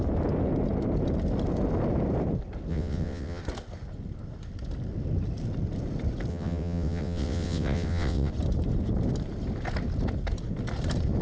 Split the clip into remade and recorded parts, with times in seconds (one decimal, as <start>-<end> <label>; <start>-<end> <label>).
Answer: 0.0-2.7 recorded; 2.7-3.4 remade; 3.4-6.3 recorded; 6.3-8.3 remade; 8.3-11.2 recorded